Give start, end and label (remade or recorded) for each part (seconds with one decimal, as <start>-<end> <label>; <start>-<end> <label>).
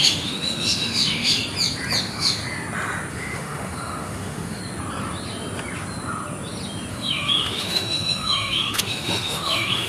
0.0-1.4 remade; 1.4-2.0 recorded; 2.0-2.4 remade; 2.4-3.1 recorded; 3.1-4.6 remade; 4.6-6.9 recorded; 6.9-9.9 remade